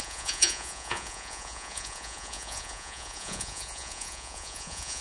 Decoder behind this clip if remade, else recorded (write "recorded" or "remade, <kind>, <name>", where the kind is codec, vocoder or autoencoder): remade, vocoder, Vocos